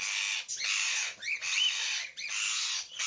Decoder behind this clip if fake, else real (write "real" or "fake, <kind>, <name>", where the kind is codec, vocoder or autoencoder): real